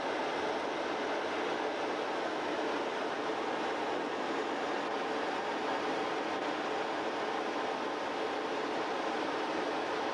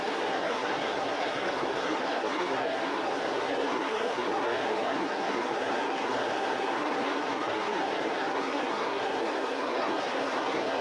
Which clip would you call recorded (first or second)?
first